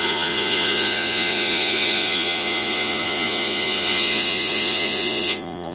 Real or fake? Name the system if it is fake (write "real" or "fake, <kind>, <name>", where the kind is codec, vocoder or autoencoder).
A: fake, vocoder, Vocos